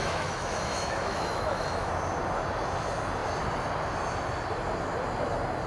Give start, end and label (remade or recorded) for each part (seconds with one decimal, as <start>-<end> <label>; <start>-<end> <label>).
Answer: 0.0-1.9 remade; 1.9-5.7 recorded